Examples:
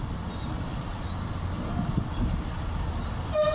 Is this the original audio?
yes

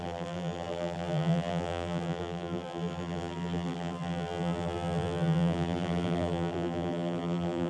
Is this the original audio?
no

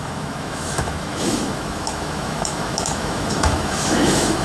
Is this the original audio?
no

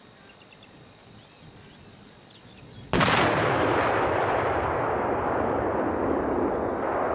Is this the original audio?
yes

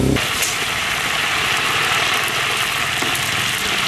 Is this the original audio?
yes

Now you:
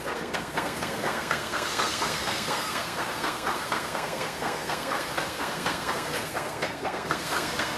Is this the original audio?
no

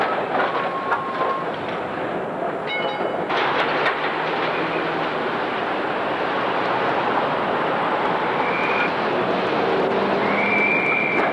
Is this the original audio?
yes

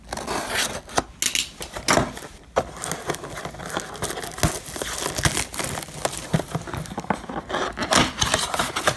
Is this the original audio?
yes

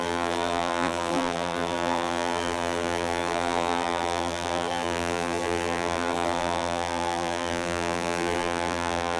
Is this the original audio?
no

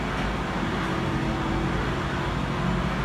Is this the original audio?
yes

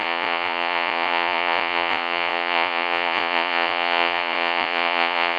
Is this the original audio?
no